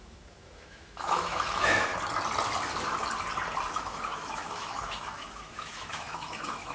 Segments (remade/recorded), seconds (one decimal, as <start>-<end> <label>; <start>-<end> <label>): 0.0-1.9 remade; 1.9-3.7 recorded; 3.7-6.7 remade